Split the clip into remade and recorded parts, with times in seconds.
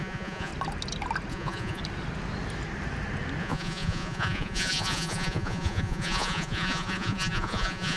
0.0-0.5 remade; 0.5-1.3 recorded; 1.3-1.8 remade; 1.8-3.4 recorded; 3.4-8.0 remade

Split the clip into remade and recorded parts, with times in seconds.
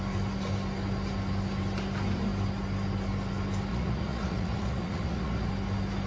0.0-3.7 recorded; 3.7-5.5 remade; 5.5-6.1 recorded